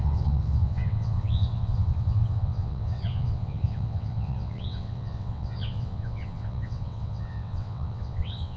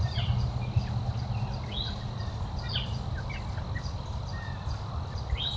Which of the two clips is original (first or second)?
second